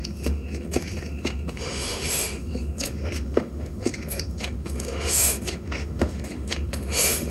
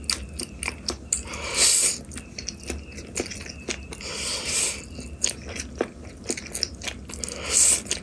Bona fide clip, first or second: second